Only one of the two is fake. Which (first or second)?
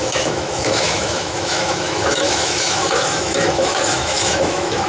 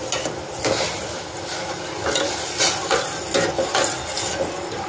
first